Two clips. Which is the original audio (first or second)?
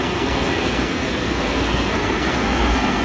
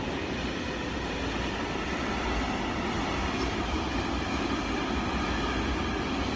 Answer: second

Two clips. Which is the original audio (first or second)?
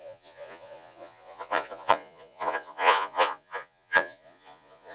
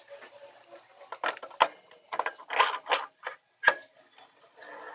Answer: second